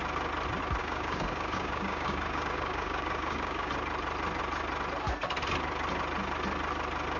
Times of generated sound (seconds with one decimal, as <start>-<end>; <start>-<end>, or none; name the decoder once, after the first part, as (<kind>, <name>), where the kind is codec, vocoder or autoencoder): 0.8-3.7 (codec, DAC)